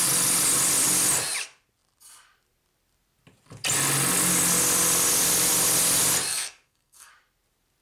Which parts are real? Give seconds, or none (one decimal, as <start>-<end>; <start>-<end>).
0.0-6.3; 7.1-7.8